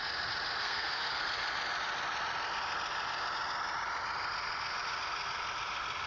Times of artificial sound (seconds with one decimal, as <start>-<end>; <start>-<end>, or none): 0.6-1.2